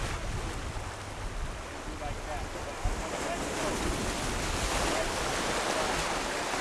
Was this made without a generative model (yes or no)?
yes